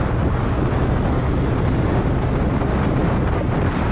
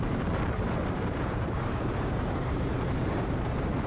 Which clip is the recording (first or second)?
first